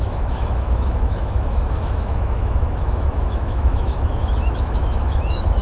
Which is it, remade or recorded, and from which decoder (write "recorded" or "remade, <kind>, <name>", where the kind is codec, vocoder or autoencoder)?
remade, autoencoder, DAC-VAE